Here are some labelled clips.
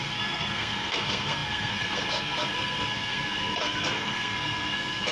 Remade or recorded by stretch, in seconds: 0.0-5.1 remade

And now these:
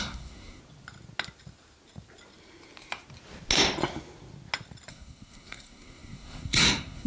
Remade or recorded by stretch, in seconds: 0.0-0.6 remade; 0.6-4.9 recorded; 4.9-7.1 remade

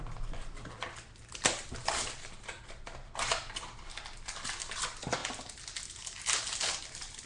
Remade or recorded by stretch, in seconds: 0.0-7.3 recorded

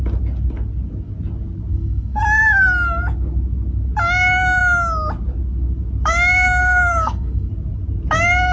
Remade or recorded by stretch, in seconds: 0.0-1.7 recorded; 1.7-2.2 remade; 2.2-6.6 recorded; 6.6-7.5 remade; 7.5-8.5 recorded

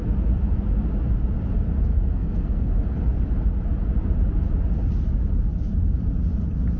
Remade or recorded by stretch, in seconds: 0.0-1.9 recorded; 1.9-2.7 remade; 2.7-6.8 recorded

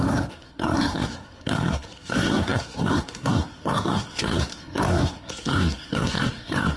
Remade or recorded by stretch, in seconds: 0.0-6.8 remade

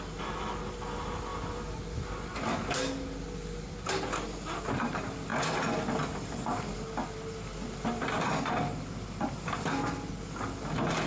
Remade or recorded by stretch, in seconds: 0.0-11.1 recorded